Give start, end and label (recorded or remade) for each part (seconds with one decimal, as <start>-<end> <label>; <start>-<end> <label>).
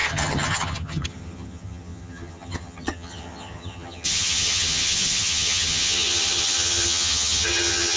0.0-8.0 remade